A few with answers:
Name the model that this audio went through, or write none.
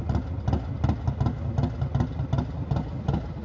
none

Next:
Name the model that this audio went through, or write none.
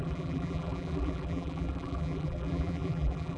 vocoder, BigVGAN v2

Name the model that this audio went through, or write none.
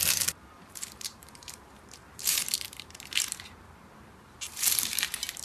vocoder, BigVGAN v2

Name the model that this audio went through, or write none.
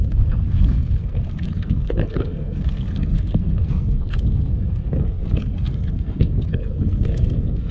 codec, SNAC